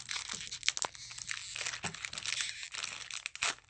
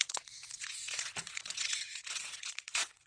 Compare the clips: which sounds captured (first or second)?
first